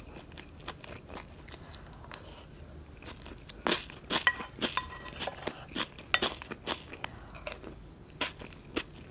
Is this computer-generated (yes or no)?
no